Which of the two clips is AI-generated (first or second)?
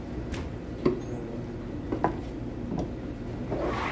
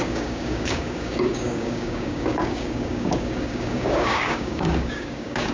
second